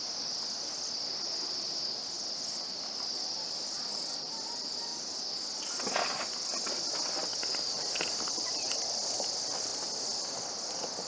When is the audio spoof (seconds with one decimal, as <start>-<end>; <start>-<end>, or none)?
none